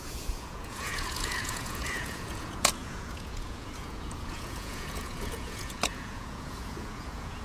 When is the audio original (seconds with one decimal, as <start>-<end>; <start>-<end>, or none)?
none